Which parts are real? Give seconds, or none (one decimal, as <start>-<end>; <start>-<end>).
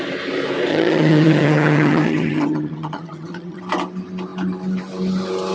0.0-0.7; 3.6-5.5